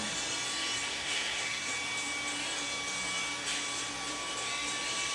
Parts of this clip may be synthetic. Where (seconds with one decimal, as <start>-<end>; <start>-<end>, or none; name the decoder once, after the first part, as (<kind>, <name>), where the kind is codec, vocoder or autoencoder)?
0.9-1.7 (codec, SNAC)